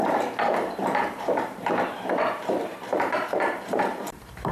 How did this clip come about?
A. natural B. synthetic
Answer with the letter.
B